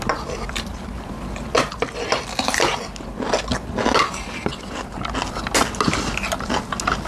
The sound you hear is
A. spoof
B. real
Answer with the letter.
B